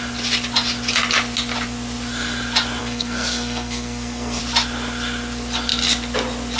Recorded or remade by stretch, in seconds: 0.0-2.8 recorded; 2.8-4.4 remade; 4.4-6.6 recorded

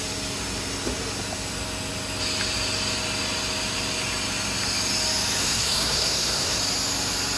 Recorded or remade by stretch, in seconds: 0.0-5.4 recorded; 5.4-6.6 remade; 6.6-7.4 recorded

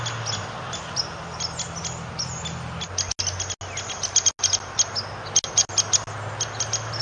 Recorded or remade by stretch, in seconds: 0.0-7.0 recorded

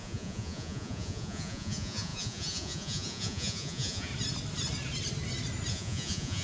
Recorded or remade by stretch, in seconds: 0.0-4.1 remade; 4.1-5.7 recorded; 5.7-6.4 remade

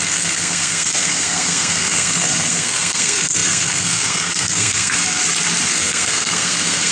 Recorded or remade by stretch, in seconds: 0.0-5.2 remade; 5.2-5.7 recorded; 5.7-6.9 remade